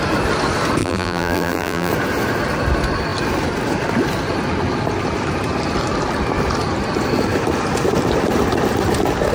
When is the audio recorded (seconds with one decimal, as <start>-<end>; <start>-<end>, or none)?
0.0-0.8; 1.9-9.3